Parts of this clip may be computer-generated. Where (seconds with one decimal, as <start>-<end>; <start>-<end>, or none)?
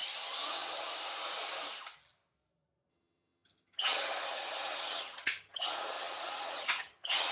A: 0.5-0.9; 2.9-7.3